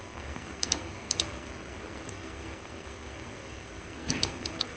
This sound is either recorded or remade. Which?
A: remade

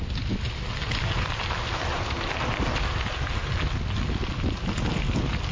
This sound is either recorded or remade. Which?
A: recorded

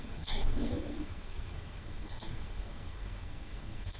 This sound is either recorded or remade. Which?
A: remade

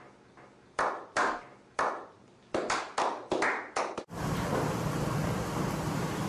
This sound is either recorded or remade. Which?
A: recorded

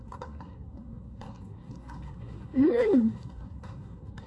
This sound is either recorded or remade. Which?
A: remade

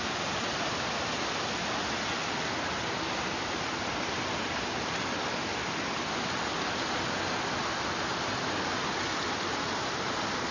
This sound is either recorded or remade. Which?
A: recorded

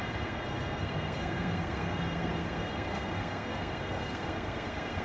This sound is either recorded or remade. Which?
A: remade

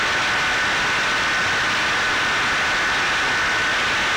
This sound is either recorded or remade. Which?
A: recorded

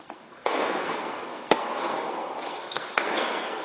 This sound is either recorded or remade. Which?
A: remade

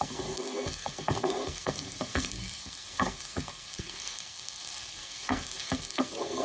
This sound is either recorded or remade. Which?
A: remade